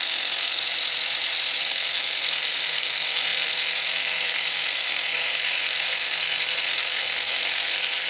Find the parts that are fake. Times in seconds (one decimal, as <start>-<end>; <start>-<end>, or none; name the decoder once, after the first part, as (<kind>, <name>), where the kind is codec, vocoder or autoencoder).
0.0-0.6 (codec, SNAC); 1.6-8.1